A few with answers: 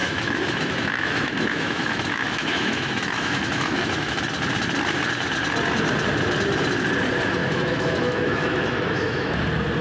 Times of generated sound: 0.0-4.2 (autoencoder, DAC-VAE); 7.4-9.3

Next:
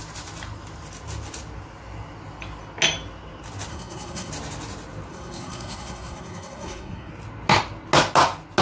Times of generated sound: 3.7-4.3 (codec, SNAC); 5.1-7.1

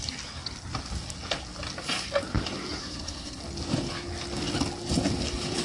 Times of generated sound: 2.8-3.4 (codec, SNAC)

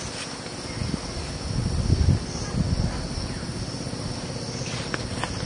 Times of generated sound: none

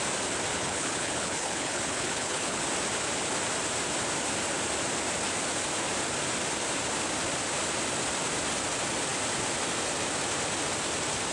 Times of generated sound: 0.5-2.6 (codec, HILCodec)

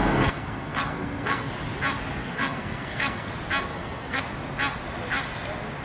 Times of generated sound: 0.0-1.5 (codec, SNAC); 2.2-3.3; 3.7-4.2

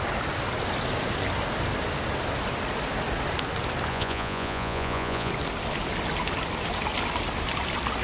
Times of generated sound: 3.9-5.3 (vocoder, Vocos)